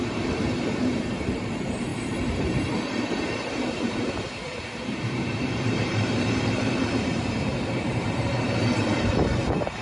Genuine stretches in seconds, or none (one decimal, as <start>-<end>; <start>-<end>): 1.9-2.4